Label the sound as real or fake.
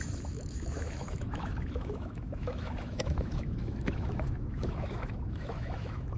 fake